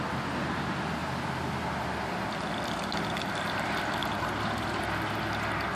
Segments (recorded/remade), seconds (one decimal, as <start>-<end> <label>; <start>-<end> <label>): 0.0-4.0 recorded; 4.0-4.8 remade; 4.8-5.8 recorded

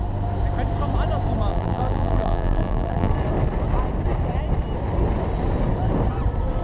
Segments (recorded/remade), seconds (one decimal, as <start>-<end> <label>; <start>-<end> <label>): 0.0-1.5 recorded; 1.5-3.1 remade; 3.1-6.6 recorded

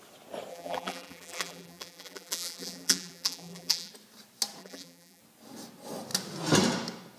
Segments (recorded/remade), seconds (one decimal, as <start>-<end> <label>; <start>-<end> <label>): 0.0-0.5 recorded; 0.5-3.9 remade; 3.9-4.6 recorded; 4.6-5.2 remade; 5.2-7.2 recorded